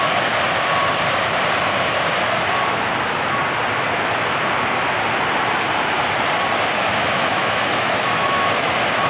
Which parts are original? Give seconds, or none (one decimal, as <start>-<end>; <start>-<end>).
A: 0.0-6.9; 8.7-9.1